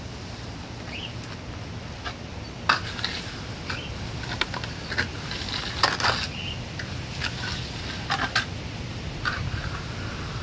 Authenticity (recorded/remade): recorded